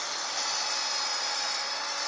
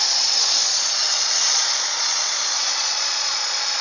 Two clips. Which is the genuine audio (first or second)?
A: first